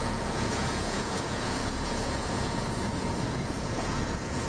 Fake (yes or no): yes